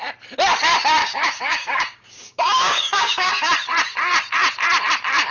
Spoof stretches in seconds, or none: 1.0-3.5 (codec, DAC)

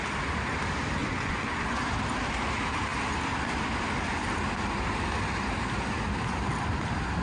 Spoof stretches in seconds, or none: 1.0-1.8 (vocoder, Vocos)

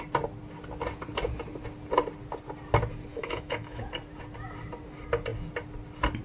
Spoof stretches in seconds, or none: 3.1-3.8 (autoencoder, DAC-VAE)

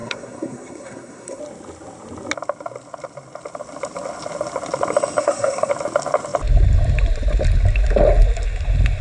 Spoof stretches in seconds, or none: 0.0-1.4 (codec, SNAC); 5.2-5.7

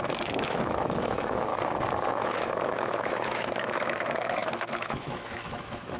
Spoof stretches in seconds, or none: 0.0-1.5 (autoencoder, DAC-VAE); 2.1-6.0